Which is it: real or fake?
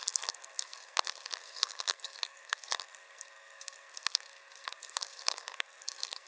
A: fake